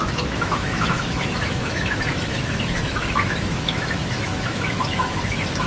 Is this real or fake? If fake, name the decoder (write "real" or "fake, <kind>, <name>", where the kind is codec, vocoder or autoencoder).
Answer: fake, autoencoder, DAC-VAE